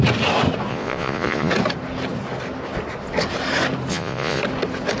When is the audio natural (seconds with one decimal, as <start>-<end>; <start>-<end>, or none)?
0.0-0.7; 1.5-3.9; 4.4-5.0